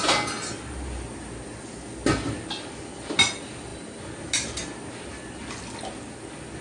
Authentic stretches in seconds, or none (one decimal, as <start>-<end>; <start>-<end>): 0.0-6.6